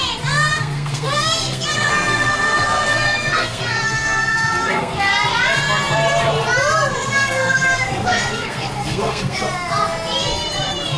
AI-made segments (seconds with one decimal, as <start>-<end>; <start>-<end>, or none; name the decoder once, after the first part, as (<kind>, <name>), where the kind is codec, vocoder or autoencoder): 0.5-5.1 (codec, SNAC); 6.9-9.4